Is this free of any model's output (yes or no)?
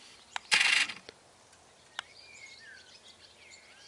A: yes